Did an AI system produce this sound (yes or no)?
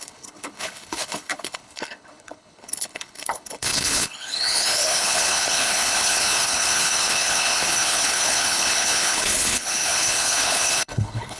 yes